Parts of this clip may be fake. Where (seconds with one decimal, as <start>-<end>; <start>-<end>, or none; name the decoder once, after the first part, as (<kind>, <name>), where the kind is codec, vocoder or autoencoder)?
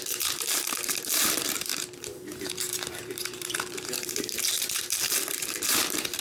0.0-6.2 (vocoder, BigVGAN v2)